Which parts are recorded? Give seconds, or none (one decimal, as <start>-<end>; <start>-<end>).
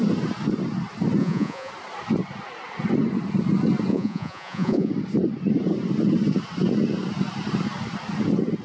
0.0-1.2; 1.7-3.9; 4.9-8.6